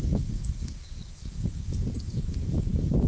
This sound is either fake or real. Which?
fake